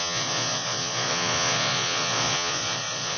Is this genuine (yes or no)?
no